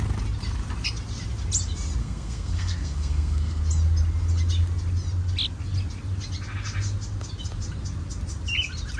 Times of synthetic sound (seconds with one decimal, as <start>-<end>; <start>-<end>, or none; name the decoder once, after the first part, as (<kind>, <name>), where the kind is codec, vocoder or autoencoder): 2.0-3.6 (codec, SNAC)